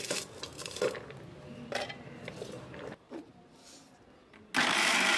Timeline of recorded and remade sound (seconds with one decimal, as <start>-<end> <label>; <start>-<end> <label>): 0.0-5.2 recorded